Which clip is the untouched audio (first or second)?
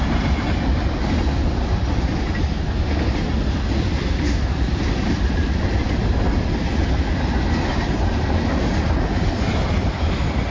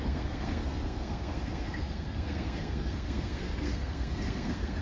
first